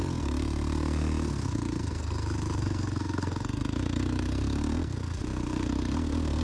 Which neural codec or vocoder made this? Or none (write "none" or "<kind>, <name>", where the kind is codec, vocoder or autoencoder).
codec, SNAC